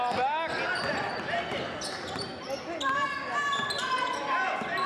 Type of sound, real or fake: real